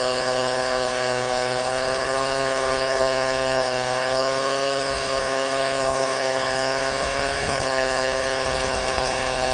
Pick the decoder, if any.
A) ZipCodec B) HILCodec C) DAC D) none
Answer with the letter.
B